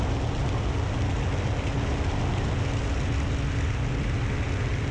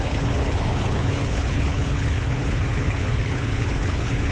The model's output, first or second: second